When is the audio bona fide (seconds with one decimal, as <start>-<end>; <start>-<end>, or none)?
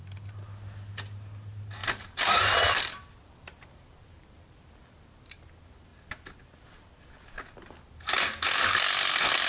0.0-1.8; 5.0-9.5